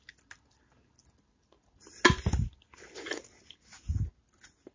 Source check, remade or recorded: recorded